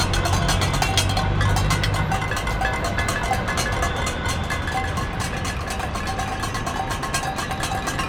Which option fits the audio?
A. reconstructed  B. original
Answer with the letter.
B